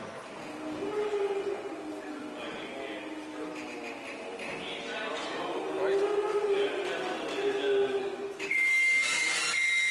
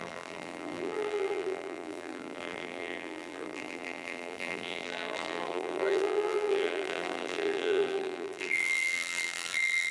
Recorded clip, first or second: first